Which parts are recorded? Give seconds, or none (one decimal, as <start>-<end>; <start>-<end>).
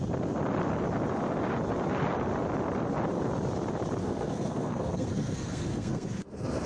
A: 0.0-4.0